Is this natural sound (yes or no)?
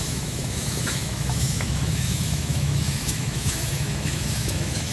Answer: no